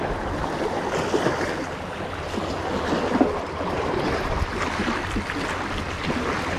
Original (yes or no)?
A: yes